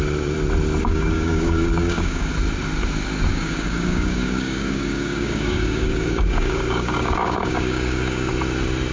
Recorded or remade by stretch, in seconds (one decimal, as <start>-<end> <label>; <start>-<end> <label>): 0.0-0.8 recorded; 0.8-2.3 remade; 2.3-3.3 recorded; 3.3-8.3 remade; 8.3-8.9 recorded